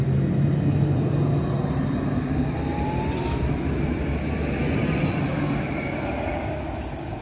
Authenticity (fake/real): real